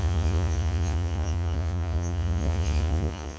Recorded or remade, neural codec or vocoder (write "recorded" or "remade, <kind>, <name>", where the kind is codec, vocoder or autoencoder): remade, vocoder, Vocos